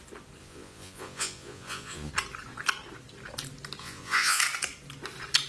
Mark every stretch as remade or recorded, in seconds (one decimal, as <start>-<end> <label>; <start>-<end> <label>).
0.0-0.4 recorded; 0.4-2.1 remade; 2.1-3.8 recorded; 3.8-4.4 remade; 4.4-5.5 recorded